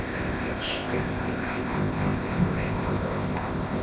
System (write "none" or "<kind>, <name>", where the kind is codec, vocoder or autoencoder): codec, ZipCodec